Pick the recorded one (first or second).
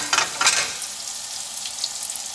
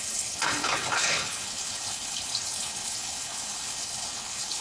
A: first